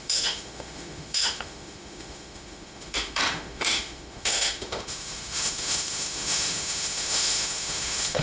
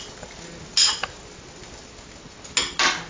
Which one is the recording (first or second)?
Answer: second